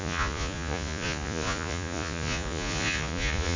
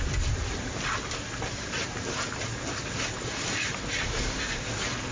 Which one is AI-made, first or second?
first